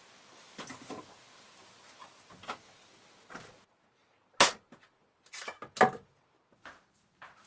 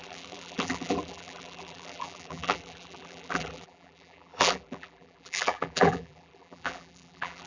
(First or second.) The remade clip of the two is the second